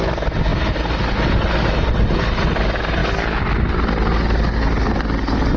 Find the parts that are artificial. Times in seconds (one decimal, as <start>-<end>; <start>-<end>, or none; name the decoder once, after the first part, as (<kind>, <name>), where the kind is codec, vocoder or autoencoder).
none